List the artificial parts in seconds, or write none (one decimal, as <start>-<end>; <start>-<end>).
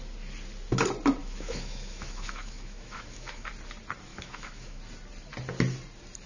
1.2-3.5; 4.1-4.8